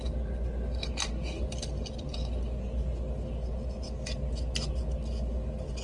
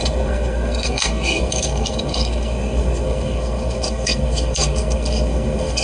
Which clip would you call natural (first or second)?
first